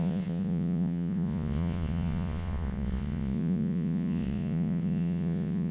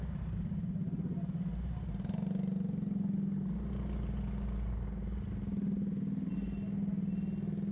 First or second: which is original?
second